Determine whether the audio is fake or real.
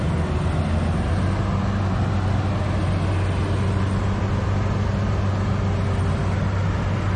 real